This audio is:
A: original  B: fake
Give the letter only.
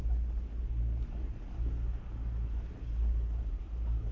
A